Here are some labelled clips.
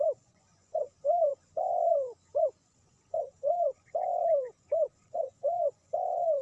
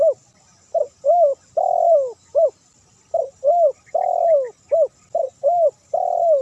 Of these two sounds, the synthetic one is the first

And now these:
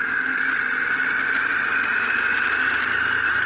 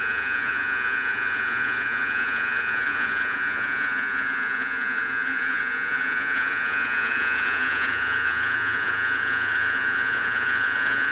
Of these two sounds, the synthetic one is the second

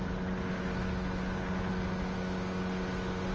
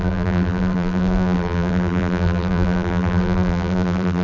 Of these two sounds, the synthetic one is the second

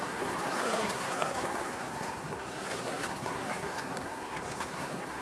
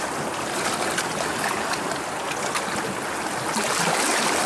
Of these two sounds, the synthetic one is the first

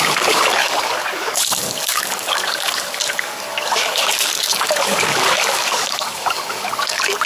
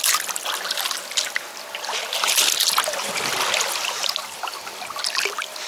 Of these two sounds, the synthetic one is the first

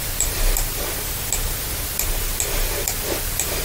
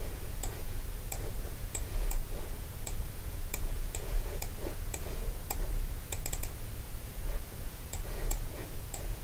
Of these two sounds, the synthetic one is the second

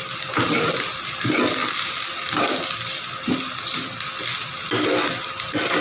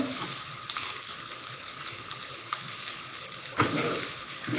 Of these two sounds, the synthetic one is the second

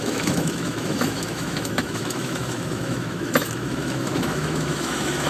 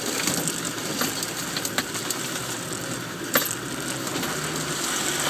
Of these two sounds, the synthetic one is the first